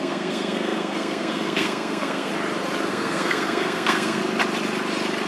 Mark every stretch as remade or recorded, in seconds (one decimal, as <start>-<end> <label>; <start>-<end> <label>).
0.0-2.3 remade; 2.3-2.9 recorded; 2.9-4.2 remade; 4.2-5.3 recorded